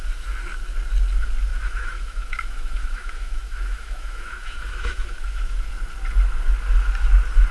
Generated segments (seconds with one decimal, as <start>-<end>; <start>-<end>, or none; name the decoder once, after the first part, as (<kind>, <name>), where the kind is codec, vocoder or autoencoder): 1.5-5.7 (autoencoder, DAC-VAE)